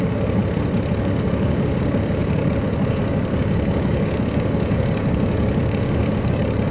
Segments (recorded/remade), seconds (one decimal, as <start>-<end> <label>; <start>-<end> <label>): 0.0-0.4 remade; 0.4-1.0 recorded; 1.0-6.7 remade